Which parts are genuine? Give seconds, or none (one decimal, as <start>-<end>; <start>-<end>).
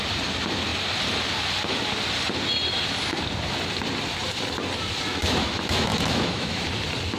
0.0-5.1; 6.6-7.2